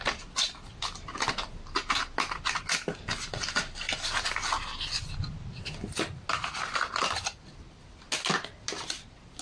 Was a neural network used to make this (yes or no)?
no